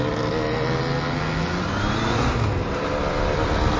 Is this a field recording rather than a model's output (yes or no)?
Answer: yes